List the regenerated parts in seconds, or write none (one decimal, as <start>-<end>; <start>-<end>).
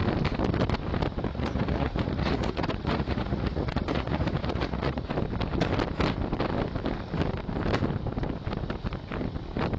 1.3-5.1